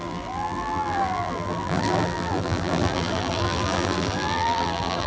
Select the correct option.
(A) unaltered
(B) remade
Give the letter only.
B